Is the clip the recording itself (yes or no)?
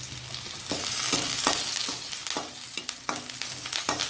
yes